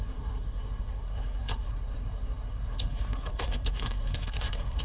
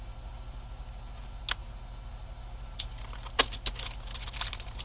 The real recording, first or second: second